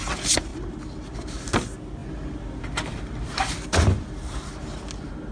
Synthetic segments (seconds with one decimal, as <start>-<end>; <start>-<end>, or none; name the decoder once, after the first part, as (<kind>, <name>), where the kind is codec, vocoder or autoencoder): none